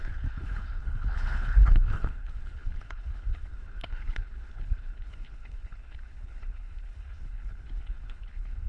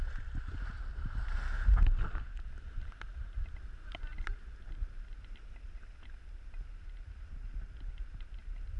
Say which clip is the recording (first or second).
second